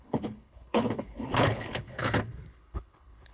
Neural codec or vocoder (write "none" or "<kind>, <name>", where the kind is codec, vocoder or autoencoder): codec, HILCodec